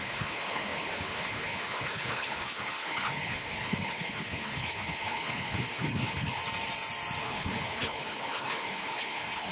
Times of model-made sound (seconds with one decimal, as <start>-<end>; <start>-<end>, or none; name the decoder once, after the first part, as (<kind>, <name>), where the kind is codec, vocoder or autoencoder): 0.0-6.4 (codec, HILCodec); 7.2-9.5